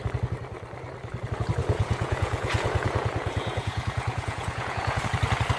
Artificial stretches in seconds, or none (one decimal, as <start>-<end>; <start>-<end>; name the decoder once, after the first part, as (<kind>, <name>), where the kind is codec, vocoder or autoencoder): 1.6-5.0 (vocoder, Vocos)